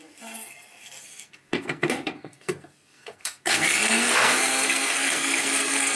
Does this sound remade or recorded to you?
remade